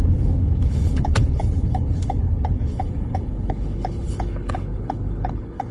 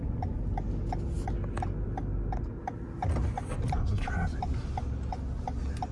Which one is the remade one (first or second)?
first